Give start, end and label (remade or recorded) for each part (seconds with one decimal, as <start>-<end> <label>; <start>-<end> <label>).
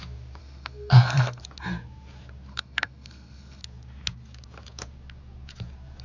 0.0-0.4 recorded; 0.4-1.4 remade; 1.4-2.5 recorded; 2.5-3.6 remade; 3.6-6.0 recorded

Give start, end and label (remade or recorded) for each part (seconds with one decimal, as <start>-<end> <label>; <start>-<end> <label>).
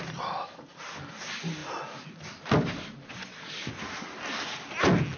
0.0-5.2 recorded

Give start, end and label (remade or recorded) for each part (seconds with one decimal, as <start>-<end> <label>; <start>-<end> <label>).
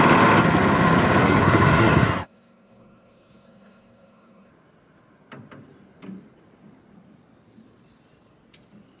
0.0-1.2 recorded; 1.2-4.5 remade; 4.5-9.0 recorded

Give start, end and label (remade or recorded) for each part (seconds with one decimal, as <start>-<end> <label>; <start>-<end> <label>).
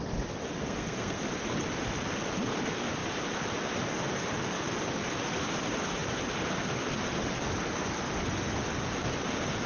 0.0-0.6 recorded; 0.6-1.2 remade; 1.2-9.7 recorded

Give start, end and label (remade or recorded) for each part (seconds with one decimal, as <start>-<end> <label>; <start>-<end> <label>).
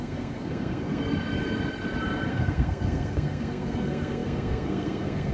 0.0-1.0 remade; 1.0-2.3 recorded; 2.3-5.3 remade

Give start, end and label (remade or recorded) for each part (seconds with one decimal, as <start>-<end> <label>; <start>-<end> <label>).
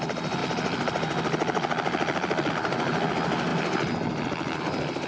0.0-5.1 recorded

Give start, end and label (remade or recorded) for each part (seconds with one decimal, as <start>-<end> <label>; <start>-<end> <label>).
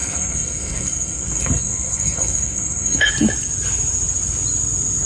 0.0-3.1 remade; 3.1-5.1 recorded